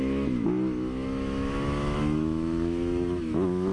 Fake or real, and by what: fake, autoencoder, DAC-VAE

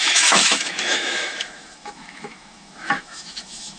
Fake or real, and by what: fake, autoencoder, DAC-VAE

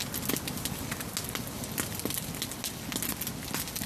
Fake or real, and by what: real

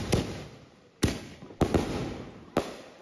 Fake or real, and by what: real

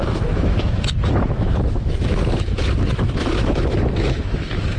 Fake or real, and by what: fake, autoencoder, DAC-VAE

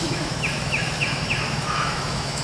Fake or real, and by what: fake, autoencoder, DAC-VAE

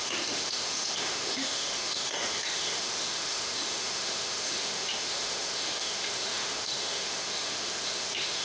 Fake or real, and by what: fake, autoencoder, DAC-VAE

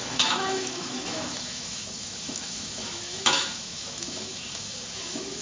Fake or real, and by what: fake, autoencoder, DAC-VAE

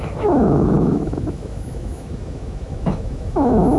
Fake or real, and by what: fake, autoencoder, DAC-VAE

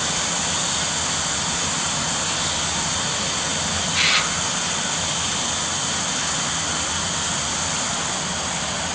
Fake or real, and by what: real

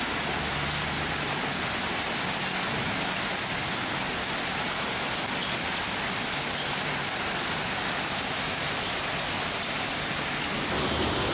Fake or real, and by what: real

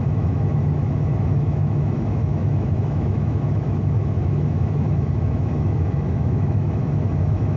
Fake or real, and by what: fake, autoencoder, DAC-VAE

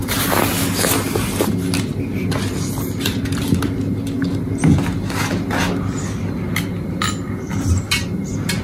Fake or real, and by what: real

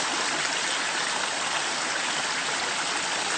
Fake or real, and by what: real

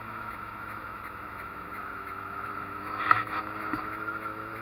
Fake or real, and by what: fake, autoencoder, DAC-VAE